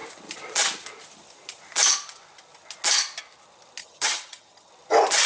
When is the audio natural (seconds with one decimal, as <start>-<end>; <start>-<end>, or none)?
0.0-3.8; 4.7-5.3